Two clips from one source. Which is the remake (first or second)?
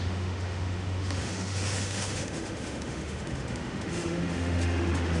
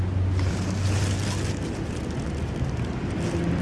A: first